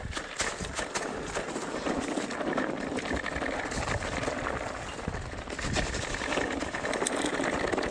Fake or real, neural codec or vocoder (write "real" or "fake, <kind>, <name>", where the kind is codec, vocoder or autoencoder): real